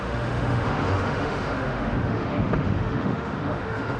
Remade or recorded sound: remade